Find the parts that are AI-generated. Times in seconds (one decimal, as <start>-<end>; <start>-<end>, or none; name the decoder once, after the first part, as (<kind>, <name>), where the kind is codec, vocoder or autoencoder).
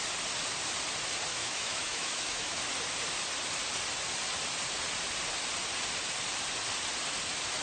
1.3-2.6 (autoencoder, DAC-VAE)